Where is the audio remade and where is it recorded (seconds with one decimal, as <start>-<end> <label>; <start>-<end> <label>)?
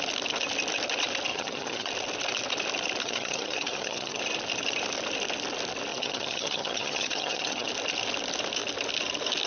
0.0-1.3 recorded; 1.3-1.9 remade; 1.9-3.0 recorded; 3.0-4.2 remade; 4.2-5.9 recorded; 5.9-7.7 remade; 7.7-9.5 recorded